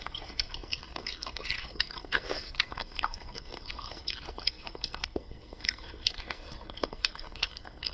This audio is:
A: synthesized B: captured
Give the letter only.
A